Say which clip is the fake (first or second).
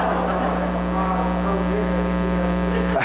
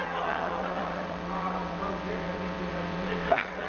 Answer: second